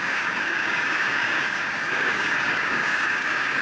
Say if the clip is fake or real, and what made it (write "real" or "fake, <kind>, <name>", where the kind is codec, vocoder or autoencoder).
fake, codec, DAC